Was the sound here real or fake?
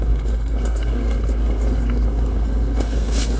fake